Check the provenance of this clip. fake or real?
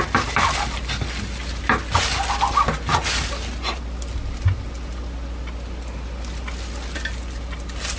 real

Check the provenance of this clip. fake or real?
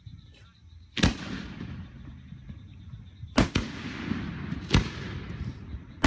real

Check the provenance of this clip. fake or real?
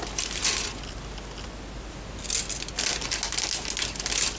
real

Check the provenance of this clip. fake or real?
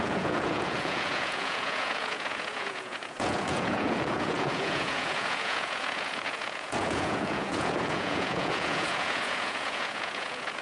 fake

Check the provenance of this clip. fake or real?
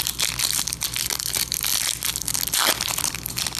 real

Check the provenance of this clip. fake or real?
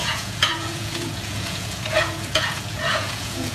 fake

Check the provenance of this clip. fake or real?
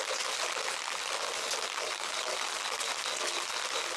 real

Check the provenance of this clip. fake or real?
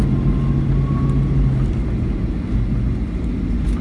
real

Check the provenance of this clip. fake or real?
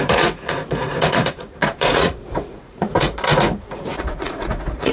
fake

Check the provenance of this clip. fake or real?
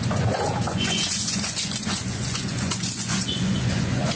fake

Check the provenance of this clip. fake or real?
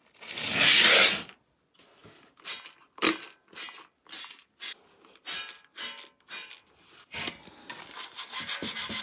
real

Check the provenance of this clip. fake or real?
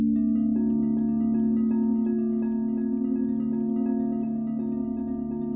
real